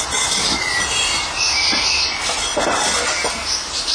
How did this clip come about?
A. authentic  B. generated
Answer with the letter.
A